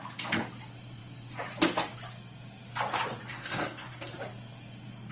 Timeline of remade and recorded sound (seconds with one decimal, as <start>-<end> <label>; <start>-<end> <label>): 0.0-3.3 recorded; 3.3-4.1 remade; 4.1-5.1 recorded